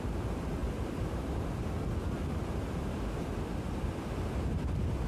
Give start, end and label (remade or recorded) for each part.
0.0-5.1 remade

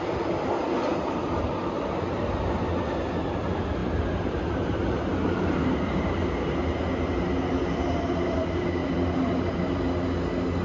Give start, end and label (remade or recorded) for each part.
0.0-0.9 recorded; 0.9-2.2 remade; 2.2-3.8 recorded; 3.8-6.3 remade; 6.3-8.8 recorded; 8.8-9.8 remade; 9.8-10.6 recorded